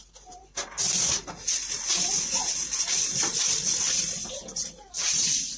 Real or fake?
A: real